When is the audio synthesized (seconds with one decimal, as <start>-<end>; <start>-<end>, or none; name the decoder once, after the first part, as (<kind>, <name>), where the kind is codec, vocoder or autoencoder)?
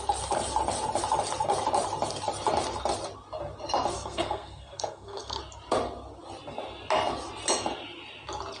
3.9-5.4 (codec, SNAC)